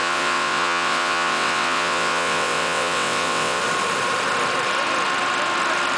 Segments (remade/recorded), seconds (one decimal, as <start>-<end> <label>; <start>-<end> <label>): 0.0-3.6 remade; 3.6-6.0 recorded